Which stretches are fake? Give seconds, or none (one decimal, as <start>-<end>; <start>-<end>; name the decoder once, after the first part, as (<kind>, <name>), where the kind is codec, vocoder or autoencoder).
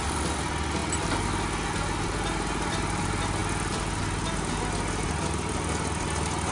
none